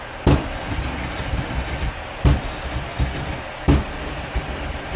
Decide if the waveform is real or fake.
real